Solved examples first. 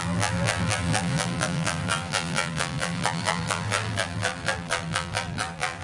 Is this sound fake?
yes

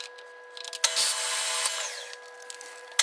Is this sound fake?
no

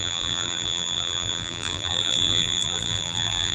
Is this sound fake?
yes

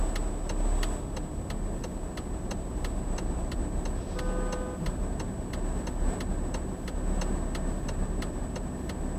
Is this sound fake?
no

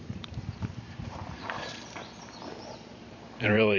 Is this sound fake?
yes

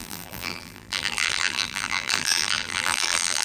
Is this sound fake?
yes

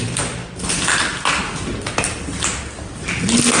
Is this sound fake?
no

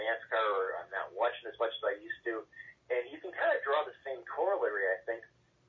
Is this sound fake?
yes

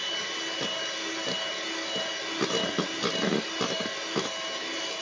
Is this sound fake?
no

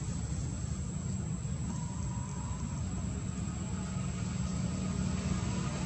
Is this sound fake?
no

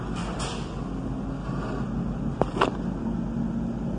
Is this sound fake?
no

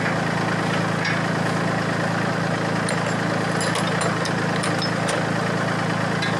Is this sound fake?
no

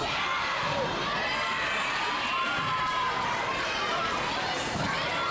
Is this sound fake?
no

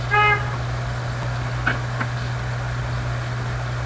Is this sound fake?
no